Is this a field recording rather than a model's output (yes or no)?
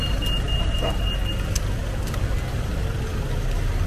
yes